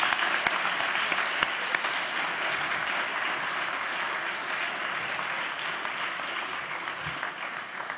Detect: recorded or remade recorded